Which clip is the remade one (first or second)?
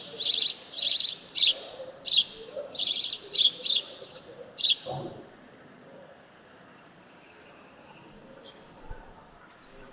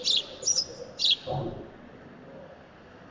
first